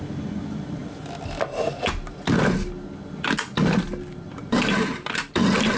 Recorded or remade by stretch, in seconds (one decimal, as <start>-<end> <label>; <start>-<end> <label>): 0.0-4.4 recorded; 4.4-5.8 remade